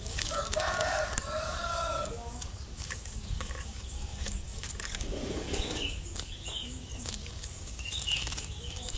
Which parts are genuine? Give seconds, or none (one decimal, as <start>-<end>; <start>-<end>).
none